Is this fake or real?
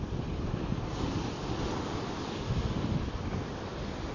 real